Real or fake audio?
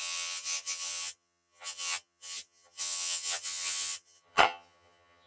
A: fake